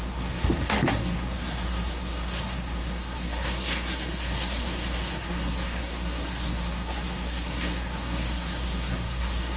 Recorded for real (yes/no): no